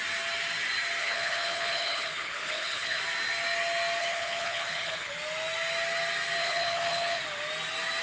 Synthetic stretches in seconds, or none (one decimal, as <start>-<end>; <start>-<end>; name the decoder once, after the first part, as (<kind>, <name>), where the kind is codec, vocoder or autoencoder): 1.0-3.0 (codec, HILCodec); 4.0-5.1; 6.4-7.2